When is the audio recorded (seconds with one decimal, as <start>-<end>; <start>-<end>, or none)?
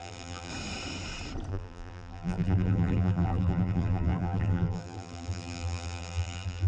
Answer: 0.5-1.5